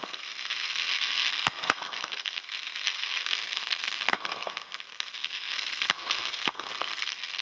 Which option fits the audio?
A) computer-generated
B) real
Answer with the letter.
A